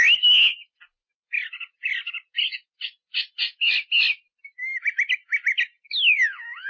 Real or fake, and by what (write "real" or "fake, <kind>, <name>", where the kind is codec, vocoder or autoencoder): real